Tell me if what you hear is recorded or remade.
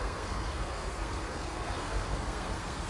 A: remade